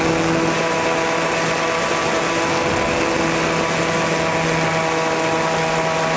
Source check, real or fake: real